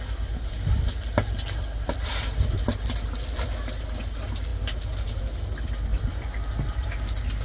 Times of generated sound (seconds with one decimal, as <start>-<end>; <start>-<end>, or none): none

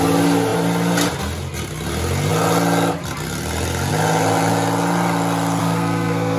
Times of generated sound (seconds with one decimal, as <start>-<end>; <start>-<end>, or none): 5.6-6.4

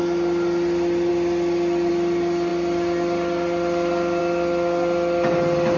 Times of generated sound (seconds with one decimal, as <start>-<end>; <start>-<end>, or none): none